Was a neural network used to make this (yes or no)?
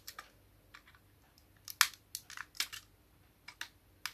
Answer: no